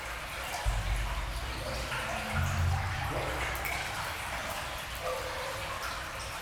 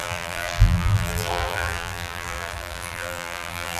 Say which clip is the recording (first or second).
first